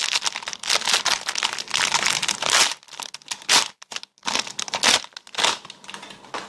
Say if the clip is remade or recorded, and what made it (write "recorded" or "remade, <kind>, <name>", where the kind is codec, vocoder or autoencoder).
recorded